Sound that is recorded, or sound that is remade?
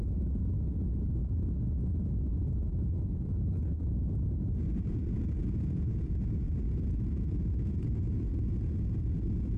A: remade